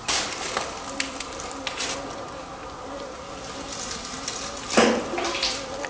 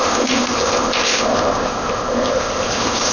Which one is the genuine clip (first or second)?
first